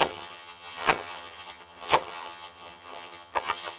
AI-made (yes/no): yes